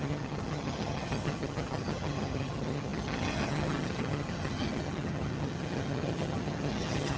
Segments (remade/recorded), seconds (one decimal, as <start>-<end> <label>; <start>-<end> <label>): 0.0-7.2 remade